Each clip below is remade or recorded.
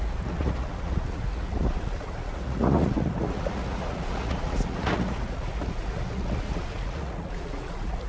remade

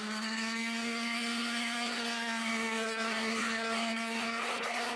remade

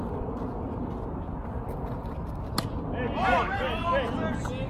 recorded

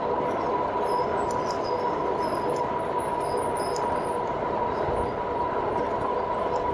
recorded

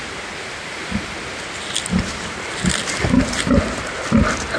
recorded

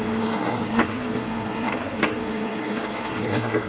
remade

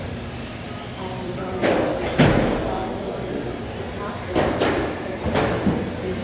recorded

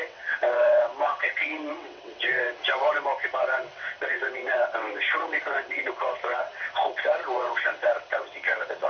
remade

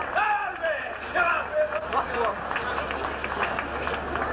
recorded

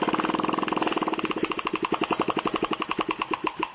recorded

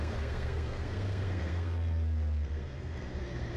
remade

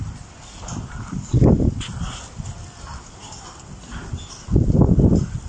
recorded